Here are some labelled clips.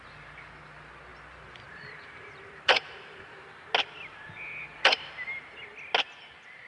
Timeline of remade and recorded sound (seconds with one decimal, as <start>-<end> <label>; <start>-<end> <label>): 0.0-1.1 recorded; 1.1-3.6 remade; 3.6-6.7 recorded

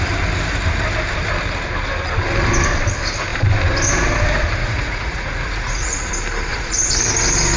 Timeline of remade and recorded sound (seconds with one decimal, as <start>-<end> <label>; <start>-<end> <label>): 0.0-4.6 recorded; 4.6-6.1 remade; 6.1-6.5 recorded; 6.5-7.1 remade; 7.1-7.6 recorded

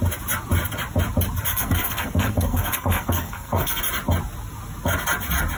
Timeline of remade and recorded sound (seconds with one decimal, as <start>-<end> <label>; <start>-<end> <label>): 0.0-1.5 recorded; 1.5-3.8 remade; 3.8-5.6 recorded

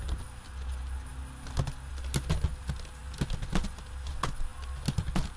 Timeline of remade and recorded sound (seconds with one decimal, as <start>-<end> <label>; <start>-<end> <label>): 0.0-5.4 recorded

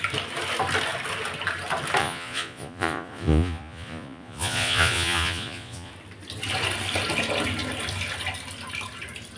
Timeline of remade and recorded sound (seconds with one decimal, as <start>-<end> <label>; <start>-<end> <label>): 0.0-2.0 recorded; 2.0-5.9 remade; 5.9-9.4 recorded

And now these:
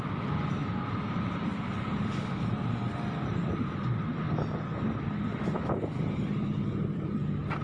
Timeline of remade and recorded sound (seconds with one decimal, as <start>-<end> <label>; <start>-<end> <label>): 0.0-7.6 recorded

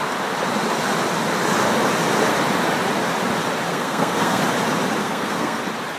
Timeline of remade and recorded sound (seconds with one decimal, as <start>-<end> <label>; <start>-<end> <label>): 0.0-3.7 recorded; 3.7-4.4 remade; 4.4-5.0 recorded; 5.0-5.6 remade; 5.6-6.0 recorded

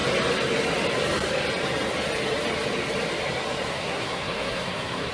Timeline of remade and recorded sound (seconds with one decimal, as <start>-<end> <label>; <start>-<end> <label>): 0.0-3.7 recorded; 3.7-5.1 remade